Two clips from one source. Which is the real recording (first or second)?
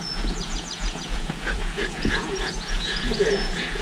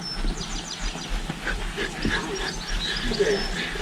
second